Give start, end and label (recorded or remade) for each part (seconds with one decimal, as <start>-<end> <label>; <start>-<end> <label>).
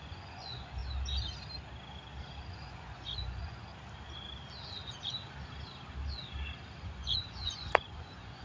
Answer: 0.0-0.8 remade; 0.8-2.5 recorded; 2.5-3.7 remade; 3.7-6.8 recorded; 6.8-8.4 remade